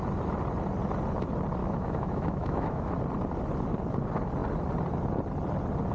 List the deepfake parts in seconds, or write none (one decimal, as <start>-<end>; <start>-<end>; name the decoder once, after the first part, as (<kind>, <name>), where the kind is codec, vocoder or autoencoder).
1.6-2.9 (autoencoder, DAC-VAE)